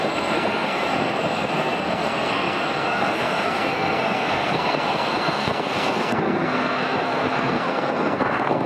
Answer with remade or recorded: remade